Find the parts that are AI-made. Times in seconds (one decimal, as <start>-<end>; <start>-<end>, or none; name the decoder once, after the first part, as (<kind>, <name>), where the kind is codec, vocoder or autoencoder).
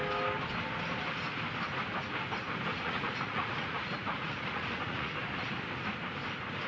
2.7-5.1 (vocoder, Vocos)